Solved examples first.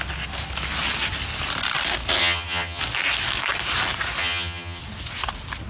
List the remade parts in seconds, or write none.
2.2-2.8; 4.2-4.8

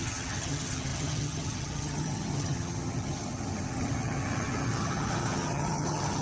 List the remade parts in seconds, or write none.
0.0-6.2

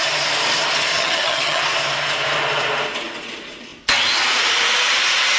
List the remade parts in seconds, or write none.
0.9-1.6

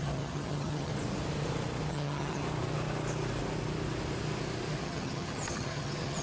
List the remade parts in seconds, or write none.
0.0-0.9; 1.9-2.4; 4.8-6.2

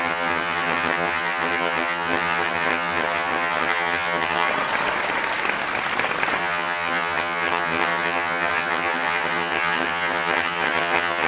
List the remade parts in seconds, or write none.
0.0-4.5; 6.4-11.3

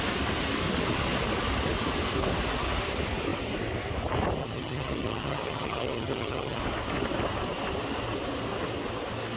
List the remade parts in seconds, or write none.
4.4-6.6

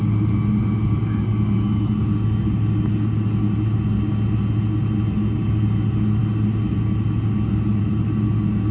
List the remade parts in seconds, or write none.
none

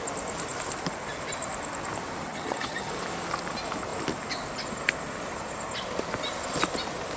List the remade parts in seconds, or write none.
2.3-2.9